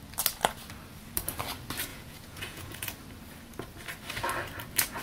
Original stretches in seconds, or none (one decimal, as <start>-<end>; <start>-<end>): 0.0-1.9; 2.9-5.0